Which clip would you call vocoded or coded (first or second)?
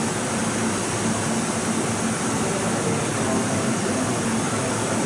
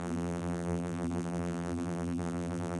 second